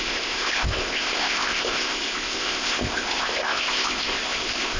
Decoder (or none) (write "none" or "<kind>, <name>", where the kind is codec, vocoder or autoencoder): codec, ZipCodec